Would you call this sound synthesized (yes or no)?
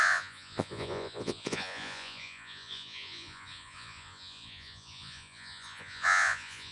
yes